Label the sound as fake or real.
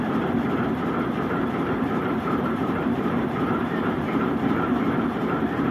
fake